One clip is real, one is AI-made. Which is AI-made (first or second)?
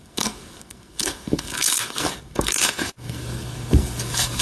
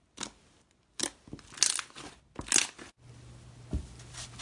first